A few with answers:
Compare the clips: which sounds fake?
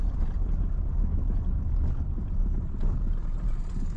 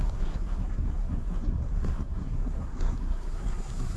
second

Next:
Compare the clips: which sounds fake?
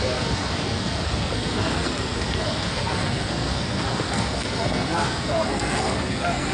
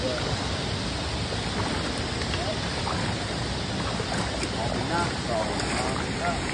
first